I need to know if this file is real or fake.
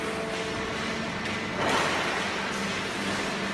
real